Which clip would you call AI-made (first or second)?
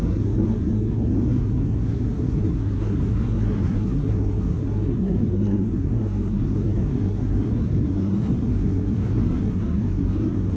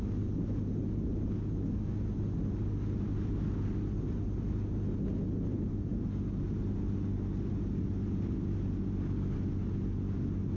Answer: first